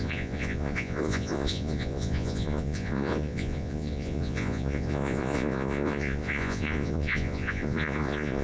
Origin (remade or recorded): remade